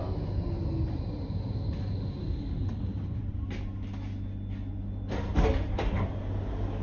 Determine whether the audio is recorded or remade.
recorded